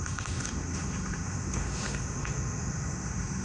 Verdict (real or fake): fake